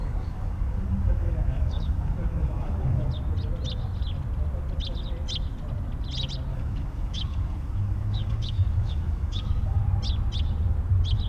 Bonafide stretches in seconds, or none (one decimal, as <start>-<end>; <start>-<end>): 3.1-6.5; 9.8-11.3